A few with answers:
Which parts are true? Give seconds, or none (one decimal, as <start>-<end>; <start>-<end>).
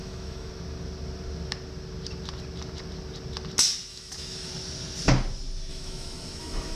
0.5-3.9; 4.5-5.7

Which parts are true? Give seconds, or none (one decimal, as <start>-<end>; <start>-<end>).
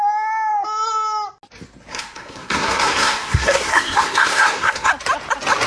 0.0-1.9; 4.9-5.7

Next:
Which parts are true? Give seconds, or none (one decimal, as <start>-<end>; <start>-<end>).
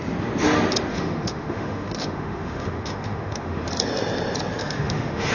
0.0-0.9; 3.7-4.6